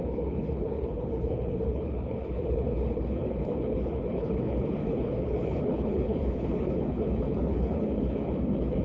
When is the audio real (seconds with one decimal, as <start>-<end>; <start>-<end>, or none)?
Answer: none